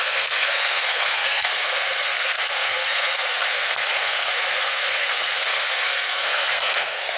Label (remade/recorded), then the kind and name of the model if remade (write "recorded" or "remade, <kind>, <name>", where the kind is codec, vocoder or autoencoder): remade, codec, SNAC